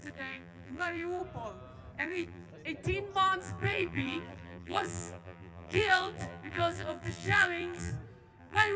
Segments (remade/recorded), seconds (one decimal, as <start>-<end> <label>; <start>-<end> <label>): 0.0-1.2 remade; 1.2-2.0 recorded; 2.0-2.5 remade; 2.5-3.4 recorded; 3.4-7.9 remade; 7.9-8.4 recorded; 8.4-8.8 remade